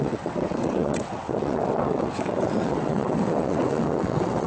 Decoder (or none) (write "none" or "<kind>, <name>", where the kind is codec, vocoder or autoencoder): vocoder, WaveNeXt